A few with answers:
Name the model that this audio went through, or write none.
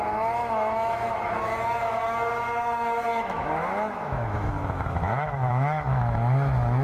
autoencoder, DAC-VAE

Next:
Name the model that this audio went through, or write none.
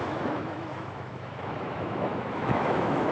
autoencoder, DAC-VAE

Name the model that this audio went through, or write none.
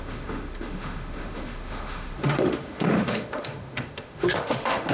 autoencoder, DAC-VAE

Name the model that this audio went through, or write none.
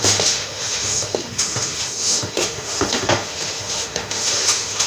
autoencoder, DAC-VAE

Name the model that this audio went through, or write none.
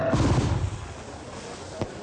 none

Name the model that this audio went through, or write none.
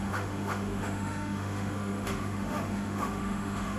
autoencoder, DAC-VAE